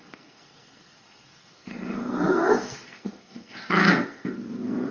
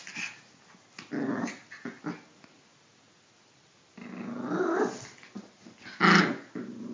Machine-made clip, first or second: first